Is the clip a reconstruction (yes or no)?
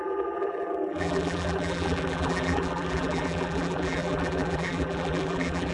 yes